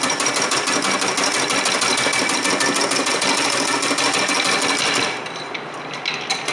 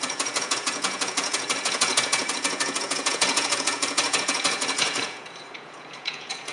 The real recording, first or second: first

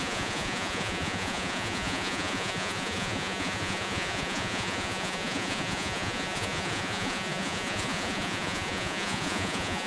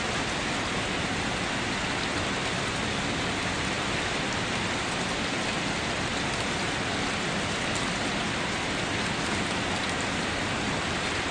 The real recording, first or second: second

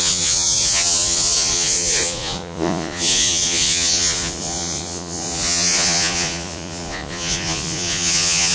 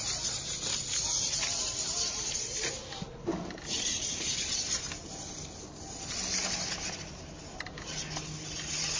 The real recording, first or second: second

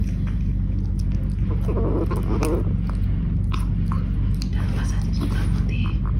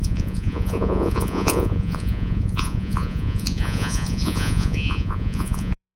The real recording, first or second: first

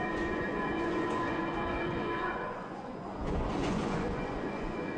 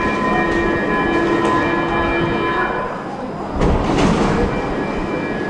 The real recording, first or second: second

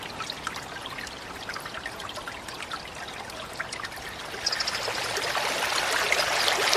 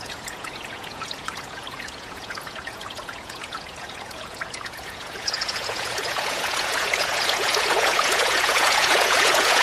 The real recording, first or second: first